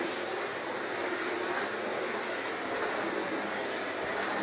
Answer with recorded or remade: recorded